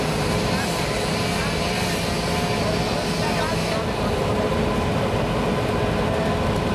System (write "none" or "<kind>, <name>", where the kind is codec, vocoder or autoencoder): none